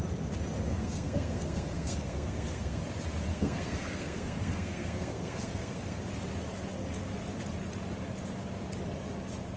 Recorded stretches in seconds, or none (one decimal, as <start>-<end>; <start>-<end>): 0.0-0.7; 2.8-3.3; 6.0-9.6